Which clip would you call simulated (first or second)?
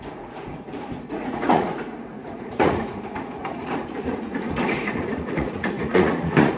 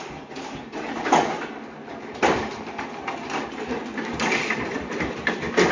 first